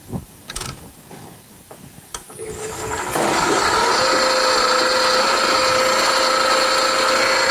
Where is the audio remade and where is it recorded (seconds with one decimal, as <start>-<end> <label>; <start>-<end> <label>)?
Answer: 0.0-3.9 remade; 3.9-7.5 recorded